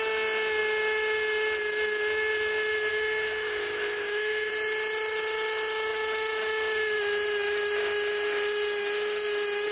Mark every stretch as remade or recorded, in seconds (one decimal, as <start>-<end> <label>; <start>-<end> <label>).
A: 0.0-2.9 recorded; 2.9-4.5 remade; 4.5-9.7 recorded